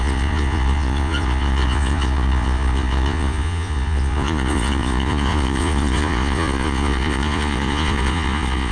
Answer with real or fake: fake